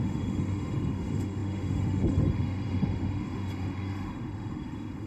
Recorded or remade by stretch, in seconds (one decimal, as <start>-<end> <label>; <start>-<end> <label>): 0.0-5.1 remade